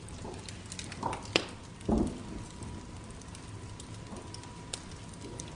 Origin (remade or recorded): recorded